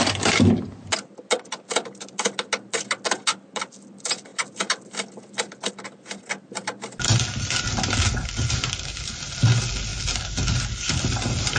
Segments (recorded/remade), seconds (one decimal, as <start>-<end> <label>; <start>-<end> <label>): 0.0-11.6 recorded

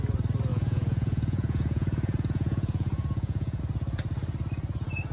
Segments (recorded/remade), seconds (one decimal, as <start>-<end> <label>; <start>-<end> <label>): 0.0-0.5 recorded; 0.5-3.6 remade; 3.6-5.1 recorded

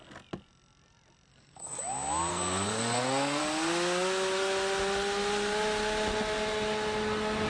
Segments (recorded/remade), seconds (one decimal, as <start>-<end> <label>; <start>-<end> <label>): 0.0-1.3 recorded; 1.3-1.8 remade; 1.8-2.3 recorded; 2.3-3.4 remade; 3.4-7.5 recorded

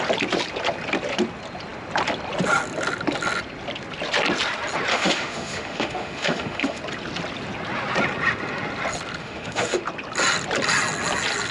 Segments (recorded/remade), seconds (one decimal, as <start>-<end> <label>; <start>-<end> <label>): 0.0-4.9 recorded; 4.9-6.8 remade; 6.8-9.2 recorded; 9.2-9.8 remade; 9.8-11.5 recorded

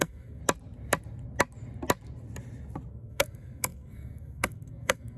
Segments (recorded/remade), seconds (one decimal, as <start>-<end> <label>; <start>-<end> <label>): 0.0-0.4 remade; 0.4-2.9 recorded; 2.9-5.2 remade

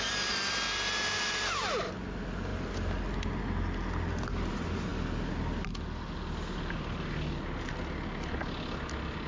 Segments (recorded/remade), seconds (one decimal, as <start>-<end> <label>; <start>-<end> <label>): 0.0-9.3 recorded